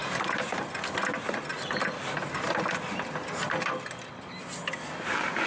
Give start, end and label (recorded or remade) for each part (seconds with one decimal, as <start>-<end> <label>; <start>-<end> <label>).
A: 0.0-5.5 recorded

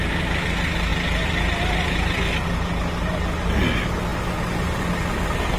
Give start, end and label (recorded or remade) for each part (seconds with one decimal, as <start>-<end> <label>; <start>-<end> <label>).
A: 0.0-5.6 recorded

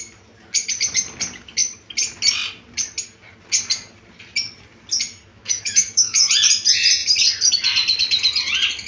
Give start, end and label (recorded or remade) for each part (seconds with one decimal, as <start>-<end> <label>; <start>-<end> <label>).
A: 0.0-5.3 recorded; 5.3-6.3 remade; 6.3-8.9 recorded